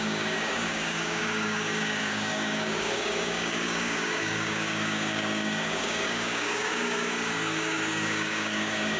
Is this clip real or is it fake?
fake